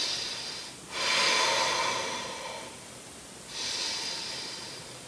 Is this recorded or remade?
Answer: recorded